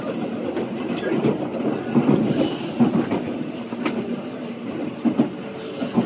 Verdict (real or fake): real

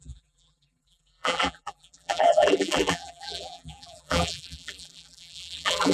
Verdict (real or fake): fake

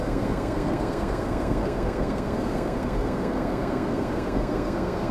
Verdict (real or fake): fake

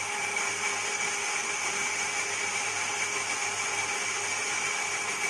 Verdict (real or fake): real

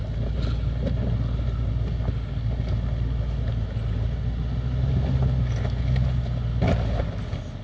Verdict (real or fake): real